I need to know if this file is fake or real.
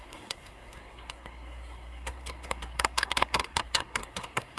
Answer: fake